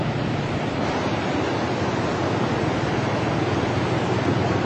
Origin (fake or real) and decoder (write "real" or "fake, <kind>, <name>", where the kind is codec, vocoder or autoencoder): real